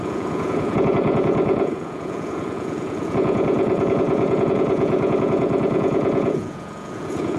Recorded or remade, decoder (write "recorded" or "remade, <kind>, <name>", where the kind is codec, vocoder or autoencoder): remade, vocoder, Vocos